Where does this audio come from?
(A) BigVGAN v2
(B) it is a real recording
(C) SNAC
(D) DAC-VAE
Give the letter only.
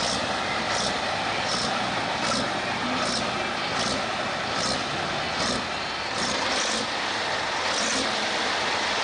B